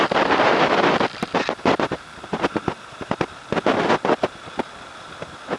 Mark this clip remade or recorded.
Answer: remade